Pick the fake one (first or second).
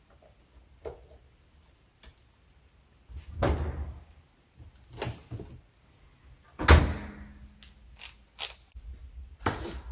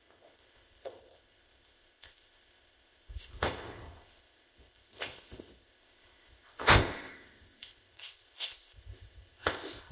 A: second